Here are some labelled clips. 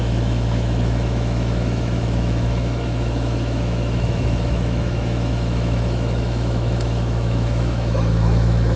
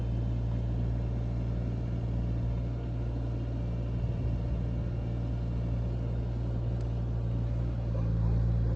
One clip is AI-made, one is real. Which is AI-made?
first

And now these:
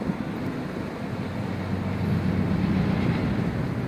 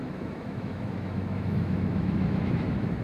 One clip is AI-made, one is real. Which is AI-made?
second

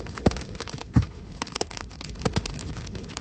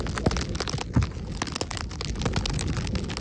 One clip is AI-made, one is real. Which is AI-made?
first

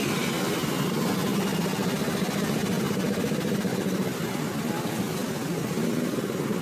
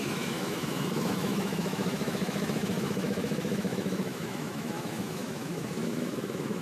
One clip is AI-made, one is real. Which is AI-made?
second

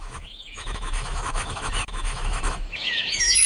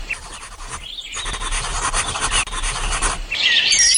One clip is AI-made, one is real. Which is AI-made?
first